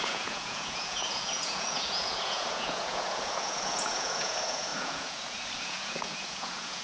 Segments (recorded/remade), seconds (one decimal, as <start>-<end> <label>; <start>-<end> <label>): 0.0-6.8 remade